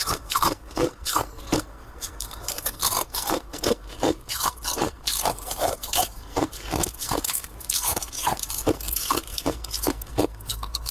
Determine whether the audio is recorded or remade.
remade